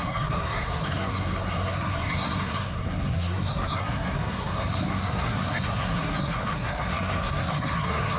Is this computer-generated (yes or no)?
yes